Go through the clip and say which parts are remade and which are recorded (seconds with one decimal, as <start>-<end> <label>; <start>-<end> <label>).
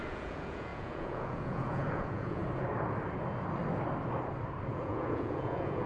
0.0-2.4 remade; 2.4-4.7 recorded; 4.7-5.9 remade